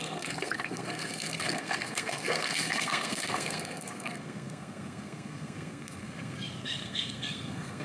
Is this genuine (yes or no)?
no